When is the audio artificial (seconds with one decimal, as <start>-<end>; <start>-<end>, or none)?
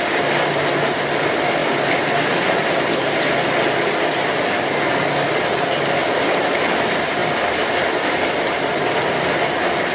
1.6-2.8; 7.2-7.8